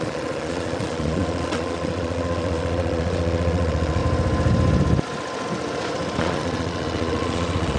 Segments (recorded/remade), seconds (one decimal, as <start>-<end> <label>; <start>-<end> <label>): 0.0-4.0 remade; 4.0-6.2 recorded; 6.2-7.8 remade